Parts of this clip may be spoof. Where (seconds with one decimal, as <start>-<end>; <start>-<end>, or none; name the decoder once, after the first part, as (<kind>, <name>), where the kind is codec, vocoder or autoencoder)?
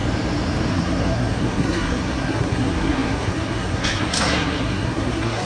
0.7-5.5 (codec, SNAC)